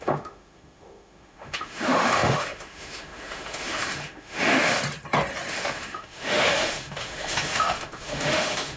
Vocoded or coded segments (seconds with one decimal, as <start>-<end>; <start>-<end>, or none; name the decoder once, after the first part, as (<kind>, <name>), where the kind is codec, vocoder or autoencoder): 0.0-4.8 (autoencoder, DAC-VAE); 5.5-8.8